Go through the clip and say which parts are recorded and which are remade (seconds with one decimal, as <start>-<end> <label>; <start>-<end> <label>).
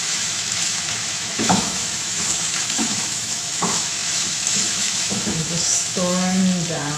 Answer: 0.0-6.4 remade; 6.4-7.0 recorded